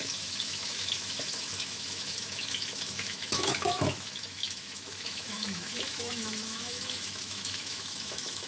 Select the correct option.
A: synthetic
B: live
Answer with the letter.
A